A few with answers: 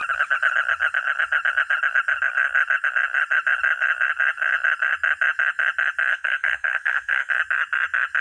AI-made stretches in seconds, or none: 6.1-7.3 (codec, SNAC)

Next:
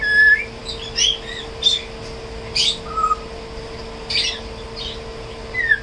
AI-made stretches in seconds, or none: none